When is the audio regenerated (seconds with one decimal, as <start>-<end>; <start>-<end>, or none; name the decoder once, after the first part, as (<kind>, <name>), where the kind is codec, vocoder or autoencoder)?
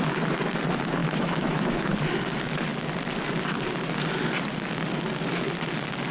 1.0-1.9 (autoencoder, DAC-VAE)